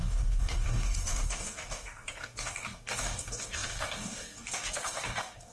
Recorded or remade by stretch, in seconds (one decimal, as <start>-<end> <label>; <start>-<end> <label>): 0.0-5.5 remade